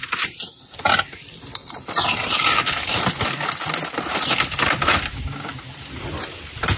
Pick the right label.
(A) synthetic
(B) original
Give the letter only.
A